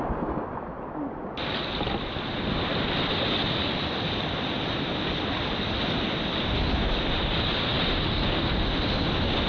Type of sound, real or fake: real